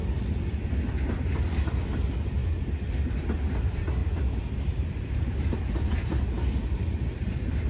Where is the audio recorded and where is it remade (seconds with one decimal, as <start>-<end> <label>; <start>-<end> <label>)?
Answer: 0.0-7.7 recorded